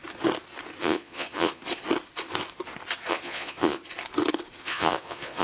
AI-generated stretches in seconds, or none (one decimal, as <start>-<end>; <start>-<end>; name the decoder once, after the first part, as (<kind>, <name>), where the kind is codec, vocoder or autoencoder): 0.8-1.6 (vocoder, Vocos); 3.1-3.8; 4.6-5.4